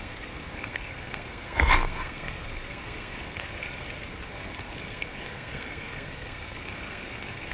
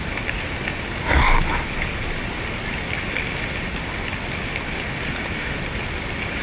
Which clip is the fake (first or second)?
first